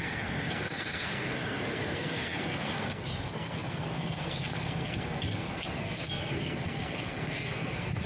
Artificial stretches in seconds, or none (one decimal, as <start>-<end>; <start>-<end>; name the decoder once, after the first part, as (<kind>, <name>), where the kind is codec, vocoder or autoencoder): 0.0-8.1 (codec, SNAC)